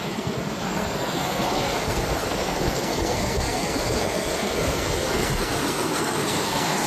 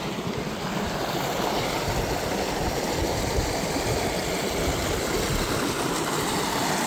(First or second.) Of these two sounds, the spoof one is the first